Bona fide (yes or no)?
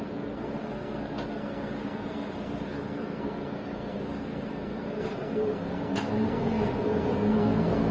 no